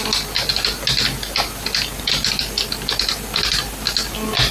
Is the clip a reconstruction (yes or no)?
no